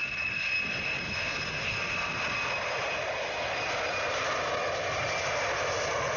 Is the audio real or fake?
real